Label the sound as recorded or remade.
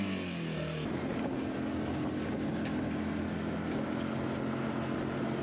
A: recorded